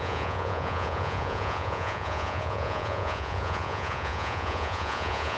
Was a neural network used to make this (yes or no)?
yes